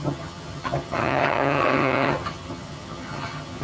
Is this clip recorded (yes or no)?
no